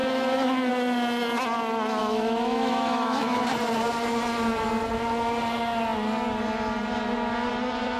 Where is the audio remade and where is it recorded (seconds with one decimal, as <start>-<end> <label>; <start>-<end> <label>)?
0.0-0.7 remade; 0.7-2.0 recorded; 2.0-3.4 remade; 3.4-8.0 recorded